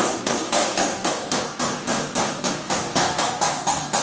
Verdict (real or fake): fake